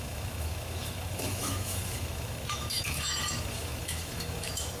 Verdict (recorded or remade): remade